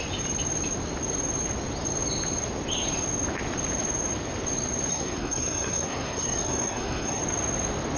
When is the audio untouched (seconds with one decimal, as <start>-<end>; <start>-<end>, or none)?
0.0-4.9; 7.2-8.0

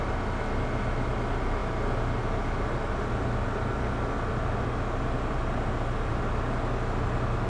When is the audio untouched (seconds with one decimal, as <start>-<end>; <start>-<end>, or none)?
0.0-7.5

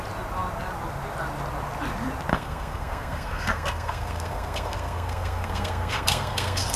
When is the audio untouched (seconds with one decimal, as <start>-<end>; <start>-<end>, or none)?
0.0-2.3

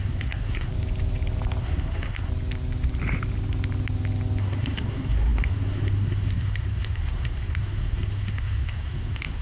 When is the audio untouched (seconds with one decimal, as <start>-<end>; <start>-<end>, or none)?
0.7-1.6; 2.3-4.4

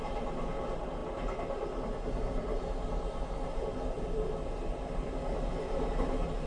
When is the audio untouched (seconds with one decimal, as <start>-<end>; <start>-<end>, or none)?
0.0-6.5

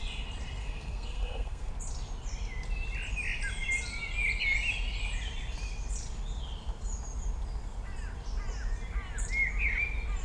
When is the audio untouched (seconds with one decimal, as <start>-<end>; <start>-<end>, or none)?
0.0-0.6; 1.7-10.2

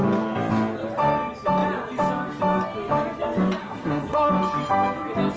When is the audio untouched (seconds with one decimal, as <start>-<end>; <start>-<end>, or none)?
0.0-3.6; 4.3-5.4